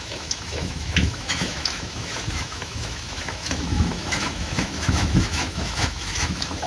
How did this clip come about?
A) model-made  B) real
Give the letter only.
A